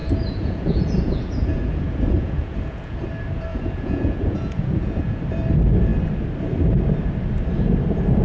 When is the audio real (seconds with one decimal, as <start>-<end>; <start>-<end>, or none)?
3.0-3.5; 5.2-8.2

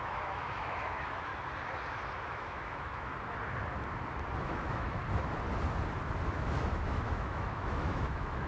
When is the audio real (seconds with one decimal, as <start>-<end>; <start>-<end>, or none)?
1.3-2.3; 3.1-4.4; 5.0-6.3